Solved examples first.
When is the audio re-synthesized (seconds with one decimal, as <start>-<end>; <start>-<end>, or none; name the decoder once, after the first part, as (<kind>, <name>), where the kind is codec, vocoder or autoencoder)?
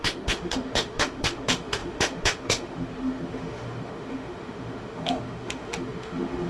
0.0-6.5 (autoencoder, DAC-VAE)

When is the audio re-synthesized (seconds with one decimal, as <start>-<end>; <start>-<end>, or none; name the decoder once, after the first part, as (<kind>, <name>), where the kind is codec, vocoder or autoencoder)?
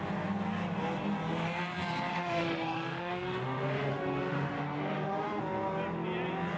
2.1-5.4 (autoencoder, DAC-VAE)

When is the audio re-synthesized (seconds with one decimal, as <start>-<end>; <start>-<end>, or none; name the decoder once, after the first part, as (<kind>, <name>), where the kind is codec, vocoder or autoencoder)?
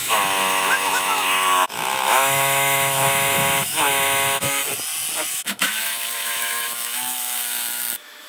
0.0-4.6 (autoencoder, DAC-VAE); 5.3-8.3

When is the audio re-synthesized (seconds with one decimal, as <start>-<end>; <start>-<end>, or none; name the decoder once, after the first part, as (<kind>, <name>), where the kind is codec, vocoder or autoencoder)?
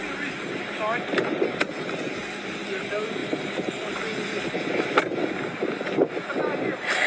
none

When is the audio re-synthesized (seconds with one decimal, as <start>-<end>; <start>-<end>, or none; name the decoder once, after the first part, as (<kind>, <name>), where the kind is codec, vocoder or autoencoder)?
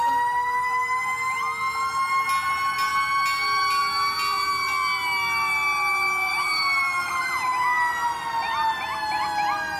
none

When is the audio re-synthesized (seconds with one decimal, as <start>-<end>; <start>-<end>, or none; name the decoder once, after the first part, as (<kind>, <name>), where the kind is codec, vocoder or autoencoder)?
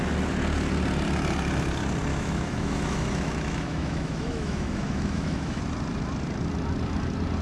2.1-5.6 (autoencoder, DAC-VAE)